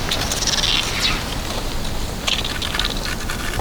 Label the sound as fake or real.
real